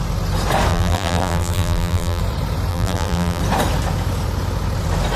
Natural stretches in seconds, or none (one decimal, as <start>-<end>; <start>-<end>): 0.0-0.7; 2.2-2.7; 3.4-5.2